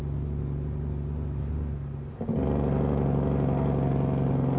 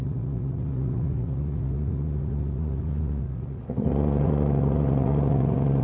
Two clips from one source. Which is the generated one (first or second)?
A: second